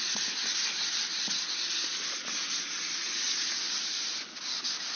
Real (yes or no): yes